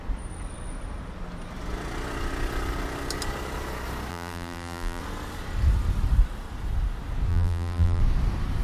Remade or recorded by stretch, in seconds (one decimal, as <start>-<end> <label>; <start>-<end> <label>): 0.0-4.1 recorded; 4.1-5.0 remade; 5.0-7.3 recorded; 7.3-8.0 remade; 8.0-8.6 recorded

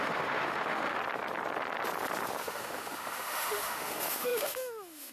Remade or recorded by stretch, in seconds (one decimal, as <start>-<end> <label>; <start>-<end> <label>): 0.0-1.0 remade; 1.0-2.4 recorded; 2.4-5.1 remade

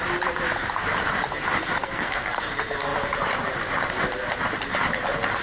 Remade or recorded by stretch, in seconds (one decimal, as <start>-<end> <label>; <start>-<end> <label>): 0.0-1.8 recorded; 1.8-2.4 remade; 2.4-5.4 recorded

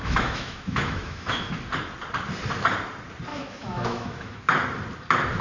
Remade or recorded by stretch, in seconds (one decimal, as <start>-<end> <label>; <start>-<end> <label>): 0.0-1.5 remade; 1.5-3.3 recorded; 3.3-4.4 remade; 4.4-5.4 recorded